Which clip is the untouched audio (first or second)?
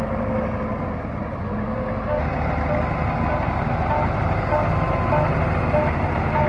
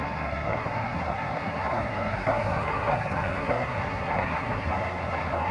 first